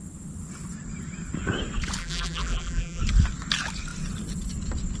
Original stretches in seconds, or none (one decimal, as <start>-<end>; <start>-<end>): 0.0-2.0; 3.0-5.0